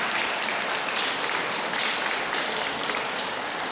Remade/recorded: recorded